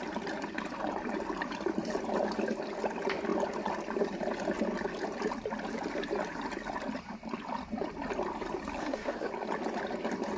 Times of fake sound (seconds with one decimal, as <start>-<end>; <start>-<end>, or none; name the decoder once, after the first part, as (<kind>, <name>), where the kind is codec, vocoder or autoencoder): 8.8-9.3 (codec, SNAC)